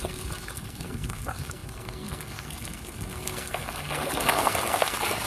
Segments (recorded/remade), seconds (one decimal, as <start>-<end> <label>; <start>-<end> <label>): 0.0-5.3 remade